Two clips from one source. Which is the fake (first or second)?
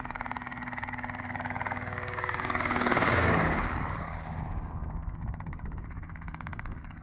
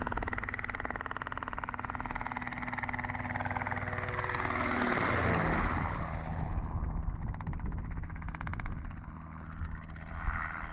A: first